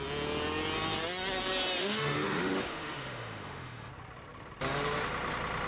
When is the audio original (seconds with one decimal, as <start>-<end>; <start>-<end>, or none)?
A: 0.0-1.8; 3.9-5.7